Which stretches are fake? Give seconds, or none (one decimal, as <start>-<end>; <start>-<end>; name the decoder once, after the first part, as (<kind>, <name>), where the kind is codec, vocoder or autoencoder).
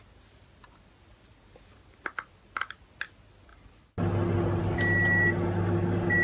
none